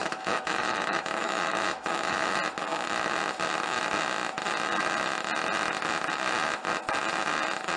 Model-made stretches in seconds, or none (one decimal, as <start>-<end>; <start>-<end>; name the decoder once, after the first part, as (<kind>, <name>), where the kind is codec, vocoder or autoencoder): 0.0-2.3 (autoencoder, DAC-VAE)